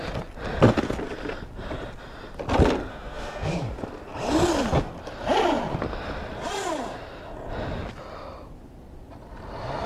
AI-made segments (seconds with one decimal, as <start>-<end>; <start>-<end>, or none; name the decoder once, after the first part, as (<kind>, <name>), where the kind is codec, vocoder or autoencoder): 2.9-3.5 (autoencoder, DAC-VAE)